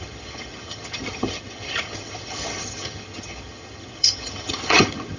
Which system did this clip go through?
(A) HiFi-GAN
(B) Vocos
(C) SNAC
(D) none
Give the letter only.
A